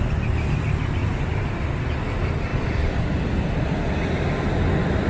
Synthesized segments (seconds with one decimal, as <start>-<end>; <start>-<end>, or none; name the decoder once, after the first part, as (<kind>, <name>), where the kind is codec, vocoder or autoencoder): 2.5-3.5 (vocoder, BigVGAN v2)